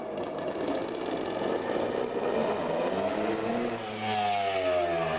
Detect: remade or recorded recorded